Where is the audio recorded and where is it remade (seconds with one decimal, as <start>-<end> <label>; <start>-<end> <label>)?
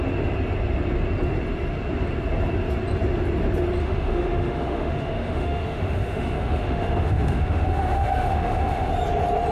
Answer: 0.0-3.8 recorded; 3.8-8.9 remade; 8.9-9.5 recorded